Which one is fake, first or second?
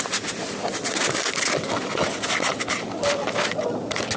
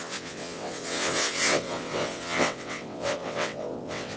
second